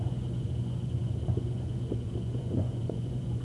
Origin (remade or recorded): remade